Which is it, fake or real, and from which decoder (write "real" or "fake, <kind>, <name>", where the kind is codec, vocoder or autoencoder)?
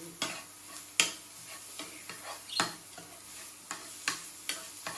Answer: real